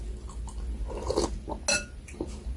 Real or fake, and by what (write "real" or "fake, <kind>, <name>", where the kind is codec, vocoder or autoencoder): real